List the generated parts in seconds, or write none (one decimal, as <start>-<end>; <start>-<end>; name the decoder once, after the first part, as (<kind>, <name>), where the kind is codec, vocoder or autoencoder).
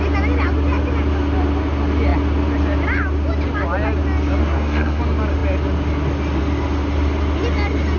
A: 4.4-5.0 (codec, SNAC)